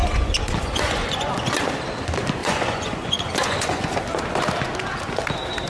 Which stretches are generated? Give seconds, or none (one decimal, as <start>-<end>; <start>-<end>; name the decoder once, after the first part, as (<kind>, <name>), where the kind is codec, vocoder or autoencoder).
0.0-1.3 (vocoder, Vocos); 2.4-4.0